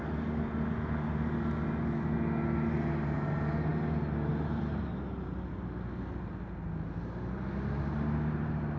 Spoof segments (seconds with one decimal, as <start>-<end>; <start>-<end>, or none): none